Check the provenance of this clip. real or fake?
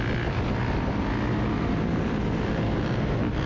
real